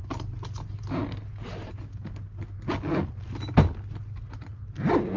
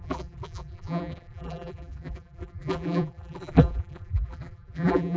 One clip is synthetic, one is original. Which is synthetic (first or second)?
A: second